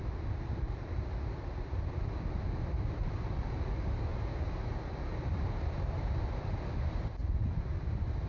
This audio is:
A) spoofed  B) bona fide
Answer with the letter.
B